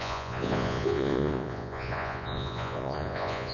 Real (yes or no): no